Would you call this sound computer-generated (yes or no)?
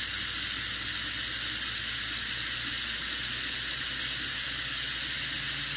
no